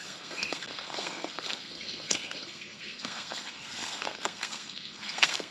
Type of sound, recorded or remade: remade